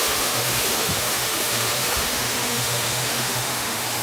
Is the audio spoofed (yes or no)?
yes